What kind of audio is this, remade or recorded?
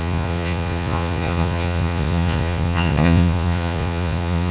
remade